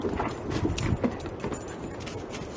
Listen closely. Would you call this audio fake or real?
real